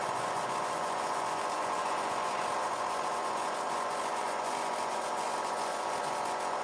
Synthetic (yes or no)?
yes